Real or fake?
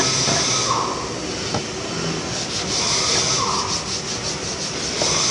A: real